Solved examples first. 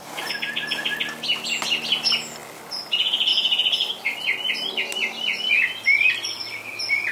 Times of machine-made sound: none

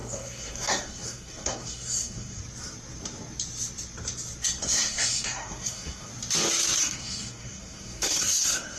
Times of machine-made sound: 0.0-2.4; 4.6-6.1; 6.8-8.8

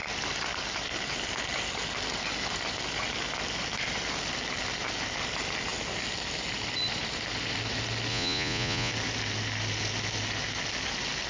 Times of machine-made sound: 8.1-8.9

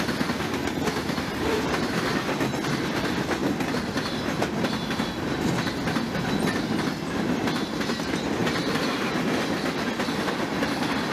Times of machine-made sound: 1.0-2.0; 8.4-9.1